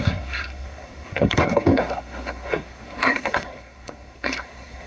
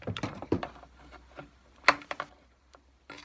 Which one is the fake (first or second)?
first